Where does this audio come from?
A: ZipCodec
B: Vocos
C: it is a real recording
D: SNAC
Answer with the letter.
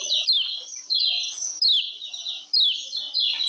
C